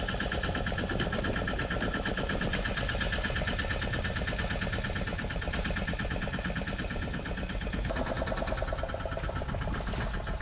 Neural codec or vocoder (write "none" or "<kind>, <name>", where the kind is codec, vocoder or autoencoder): none